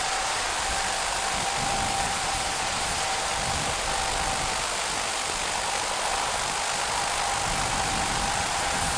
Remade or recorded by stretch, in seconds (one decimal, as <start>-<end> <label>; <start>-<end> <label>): 0.0-0.5 remade; 0.5-2.0 recorded; 2.0-3.3 remade; 3.3-8.4 recorded; 8.4-9.0 remade